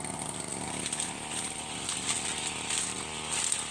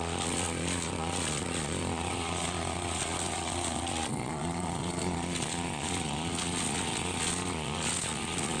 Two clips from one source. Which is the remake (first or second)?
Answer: second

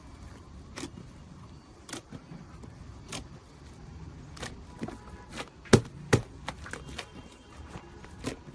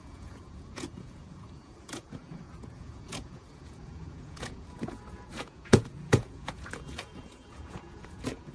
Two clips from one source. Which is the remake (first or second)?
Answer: second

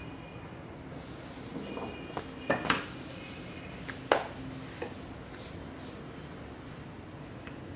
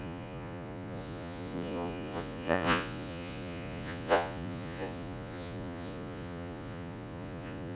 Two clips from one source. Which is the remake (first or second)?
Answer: second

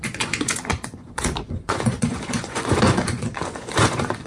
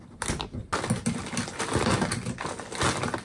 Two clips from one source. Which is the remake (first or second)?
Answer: first